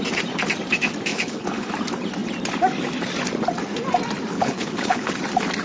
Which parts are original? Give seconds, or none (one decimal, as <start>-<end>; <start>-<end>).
0.0-1.1; 1.7-4.3; 5.1-5.6